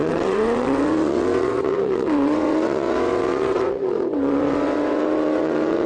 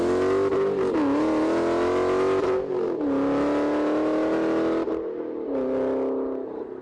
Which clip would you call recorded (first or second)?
second